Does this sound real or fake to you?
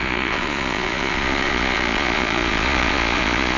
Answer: fake